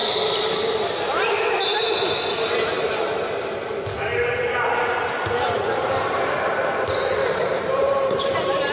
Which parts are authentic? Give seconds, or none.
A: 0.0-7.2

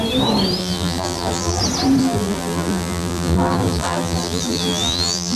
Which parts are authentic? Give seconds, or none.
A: 0.0-0.6; 1.6-2.0

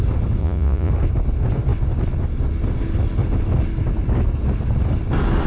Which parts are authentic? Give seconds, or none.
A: 0.0-0.4; 0.9-5.5